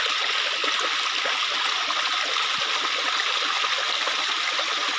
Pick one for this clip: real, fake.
real